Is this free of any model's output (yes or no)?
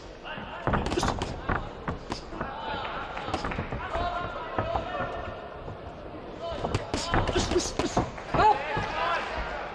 yes